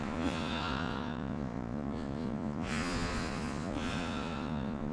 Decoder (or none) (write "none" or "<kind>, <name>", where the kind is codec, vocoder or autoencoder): vocoder, Vocos